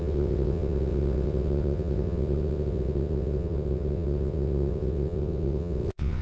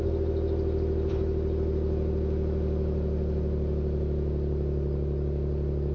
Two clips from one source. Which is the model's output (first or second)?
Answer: first